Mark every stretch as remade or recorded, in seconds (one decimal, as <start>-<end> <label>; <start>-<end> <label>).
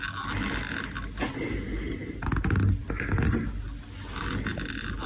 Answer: 0.0-5.1 recorded